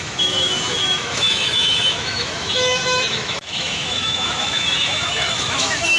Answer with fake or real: fake